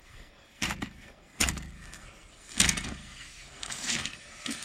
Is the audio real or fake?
fake